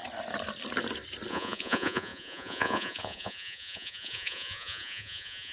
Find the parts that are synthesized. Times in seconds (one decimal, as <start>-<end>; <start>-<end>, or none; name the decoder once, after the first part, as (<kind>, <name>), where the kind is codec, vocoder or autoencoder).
1.3-5.5 (vocoder, Vocos)